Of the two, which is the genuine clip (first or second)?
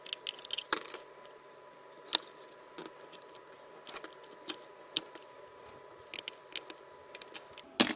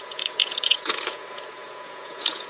first